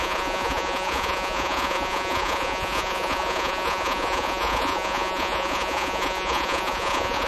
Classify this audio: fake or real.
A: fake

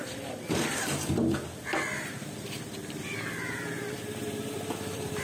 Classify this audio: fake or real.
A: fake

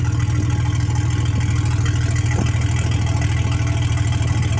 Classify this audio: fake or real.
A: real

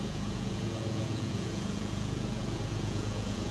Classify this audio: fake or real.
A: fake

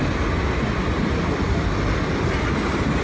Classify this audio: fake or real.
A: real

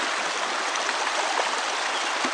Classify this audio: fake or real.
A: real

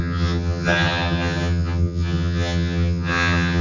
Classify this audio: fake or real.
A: fake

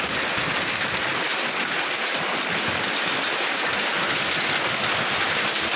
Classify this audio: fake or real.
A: real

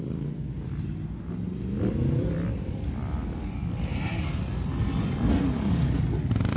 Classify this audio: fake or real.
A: real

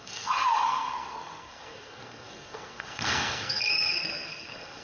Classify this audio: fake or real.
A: fake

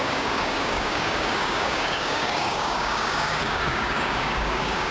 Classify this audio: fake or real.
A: fake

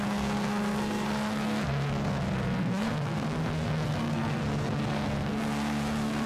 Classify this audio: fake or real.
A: fake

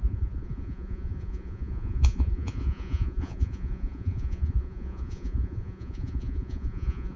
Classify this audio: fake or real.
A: fake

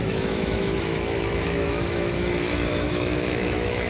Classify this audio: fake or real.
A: fake